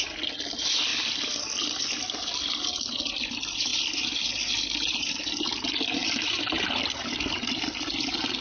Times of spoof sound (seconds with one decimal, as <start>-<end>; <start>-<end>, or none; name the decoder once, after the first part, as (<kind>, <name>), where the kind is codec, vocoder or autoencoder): none